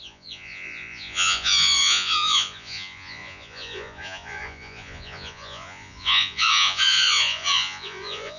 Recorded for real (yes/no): no